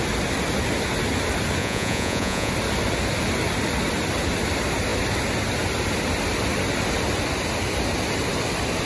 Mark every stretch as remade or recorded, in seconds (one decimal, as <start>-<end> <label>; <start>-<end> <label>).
0.0-1.6 recorded; 1.6-2.5 remade; 2.5-8.9 recorded